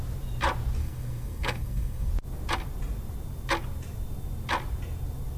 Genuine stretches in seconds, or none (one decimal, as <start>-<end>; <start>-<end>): 0.0-0.8; 2.1-5.4